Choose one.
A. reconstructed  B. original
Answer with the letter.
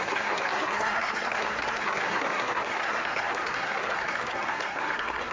A